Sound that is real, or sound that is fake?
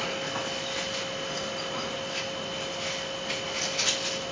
real